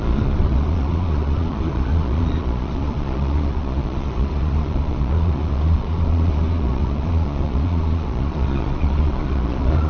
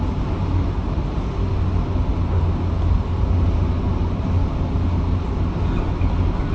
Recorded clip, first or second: second